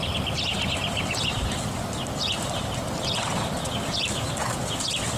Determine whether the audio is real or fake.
fake